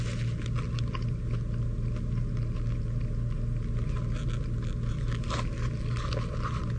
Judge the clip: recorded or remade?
recorded